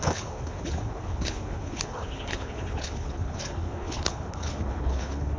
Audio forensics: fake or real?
fake